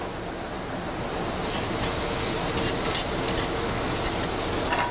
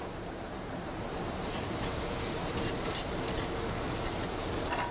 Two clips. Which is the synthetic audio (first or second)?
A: second